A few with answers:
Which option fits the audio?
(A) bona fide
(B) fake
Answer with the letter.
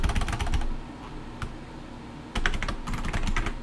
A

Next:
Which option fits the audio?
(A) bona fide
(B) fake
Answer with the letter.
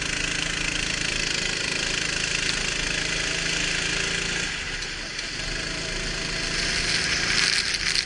A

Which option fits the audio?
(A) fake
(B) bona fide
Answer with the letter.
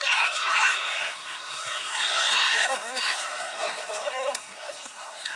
A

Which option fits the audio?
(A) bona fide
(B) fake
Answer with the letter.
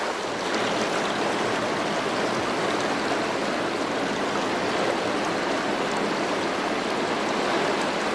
A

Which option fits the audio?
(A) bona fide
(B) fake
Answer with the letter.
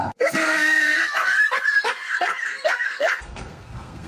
B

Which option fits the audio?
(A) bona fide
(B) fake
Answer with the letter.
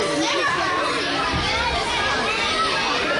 A